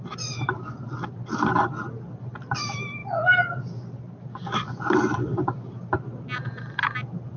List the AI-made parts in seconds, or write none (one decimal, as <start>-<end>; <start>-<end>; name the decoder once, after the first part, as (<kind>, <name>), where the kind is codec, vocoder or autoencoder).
none